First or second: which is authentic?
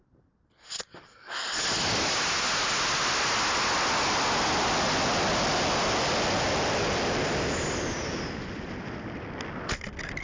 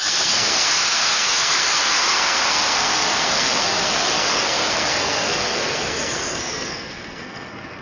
first